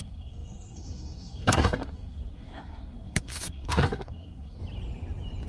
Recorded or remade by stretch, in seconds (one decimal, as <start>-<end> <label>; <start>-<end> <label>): 0.0-4.6 remade; 4.6-5.5 recorded